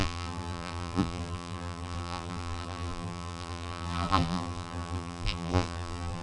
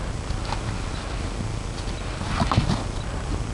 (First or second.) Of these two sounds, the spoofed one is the first